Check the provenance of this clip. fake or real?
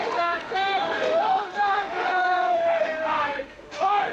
fake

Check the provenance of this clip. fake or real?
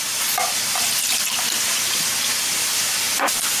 real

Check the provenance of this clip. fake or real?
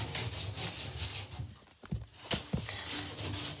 real